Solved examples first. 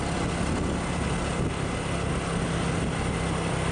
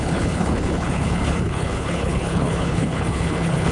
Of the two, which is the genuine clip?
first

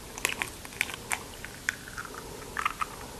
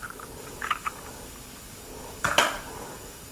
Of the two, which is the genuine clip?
first